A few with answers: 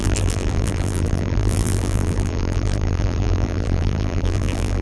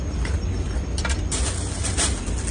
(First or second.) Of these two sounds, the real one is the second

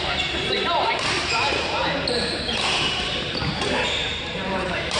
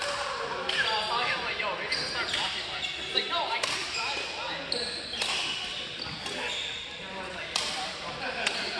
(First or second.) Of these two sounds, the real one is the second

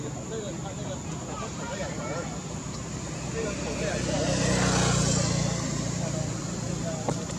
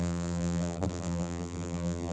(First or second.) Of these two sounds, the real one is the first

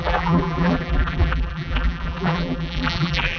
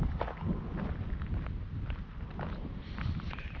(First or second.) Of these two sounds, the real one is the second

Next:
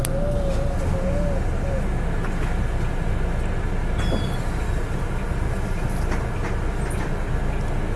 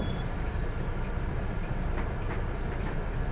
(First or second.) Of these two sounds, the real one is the first